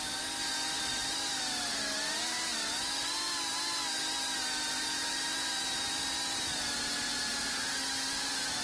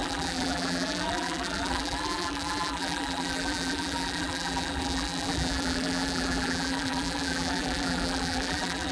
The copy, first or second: second